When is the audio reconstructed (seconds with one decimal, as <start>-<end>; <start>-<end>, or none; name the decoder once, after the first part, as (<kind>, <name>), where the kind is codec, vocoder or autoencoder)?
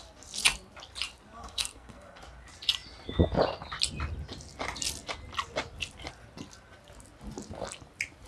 1.4-2.2 (codec, SNAC)